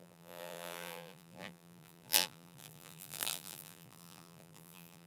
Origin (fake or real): fake